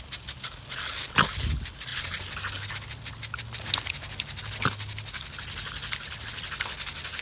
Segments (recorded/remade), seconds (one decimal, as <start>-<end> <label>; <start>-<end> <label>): 0.0-7.2 recorded